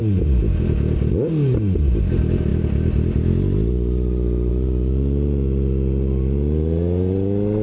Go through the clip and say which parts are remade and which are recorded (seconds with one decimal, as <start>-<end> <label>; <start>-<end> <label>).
0.0-7.6 recorded